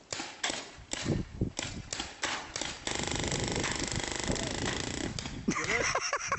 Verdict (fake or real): real